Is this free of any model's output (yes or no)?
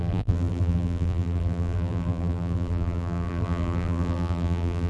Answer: no